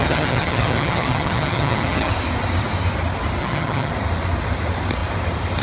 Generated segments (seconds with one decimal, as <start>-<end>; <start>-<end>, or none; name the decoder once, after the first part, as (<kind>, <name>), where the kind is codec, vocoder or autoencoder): 0.0-2.1 (vocoder, HiFi-GAN); 3.4-3.9